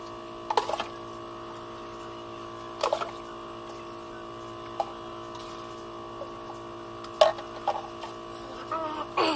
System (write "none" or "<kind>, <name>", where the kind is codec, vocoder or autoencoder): none